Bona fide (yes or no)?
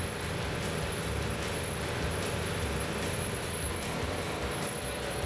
no